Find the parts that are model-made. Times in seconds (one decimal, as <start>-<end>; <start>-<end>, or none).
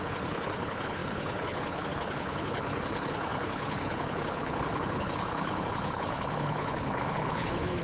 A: 0.0-7.8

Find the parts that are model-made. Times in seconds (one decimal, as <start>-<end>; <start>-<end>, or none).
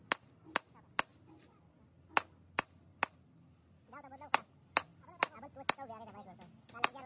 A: none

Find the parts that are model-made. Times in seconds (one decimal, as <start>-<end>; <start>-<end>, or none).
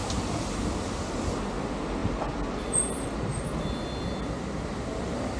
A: 0.0-1.1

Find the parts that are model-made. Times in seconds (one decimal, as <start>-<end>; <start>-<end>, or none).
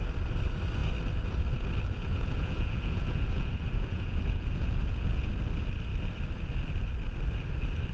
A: 2.0-5.3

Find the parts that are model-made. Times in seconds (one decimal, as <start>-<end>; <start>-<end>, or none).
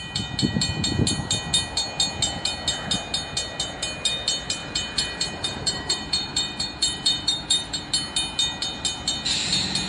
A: 4.6-7.8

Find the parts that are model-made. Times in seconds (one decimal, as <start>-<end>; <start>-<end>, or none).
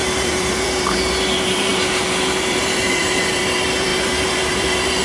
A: 0.0-5.0